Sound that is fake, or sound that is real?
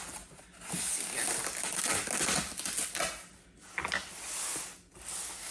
real